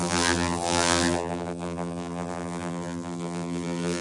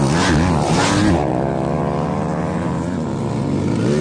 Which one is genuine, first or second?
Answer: second